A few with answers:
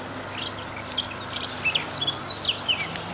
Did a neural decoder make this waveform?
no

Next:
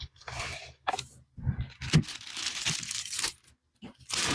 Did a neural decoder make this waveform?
no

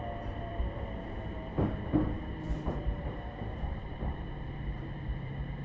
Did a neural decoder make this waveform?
yes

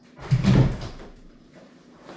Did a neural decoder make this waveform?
yes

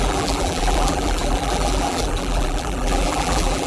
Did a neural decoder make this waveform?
yes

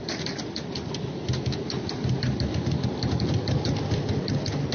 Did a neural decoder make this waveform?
no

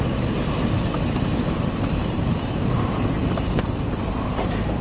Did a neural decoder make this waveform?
yes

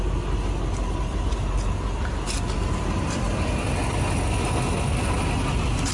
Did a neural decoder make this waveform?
no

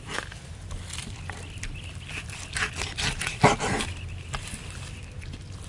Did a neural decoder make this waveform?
no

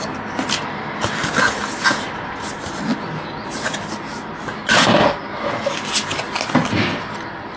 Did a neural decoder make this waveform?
no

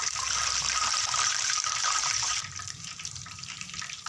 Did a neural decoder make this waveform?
yes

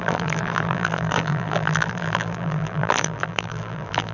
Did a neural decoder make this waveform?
yes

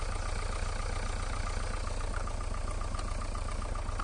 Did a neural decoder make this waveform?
no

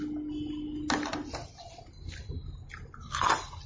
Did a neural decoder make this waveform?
no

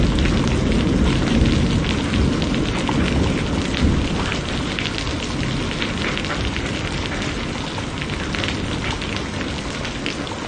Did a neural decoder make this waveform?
no